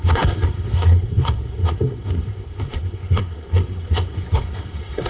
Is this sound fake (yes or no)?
yes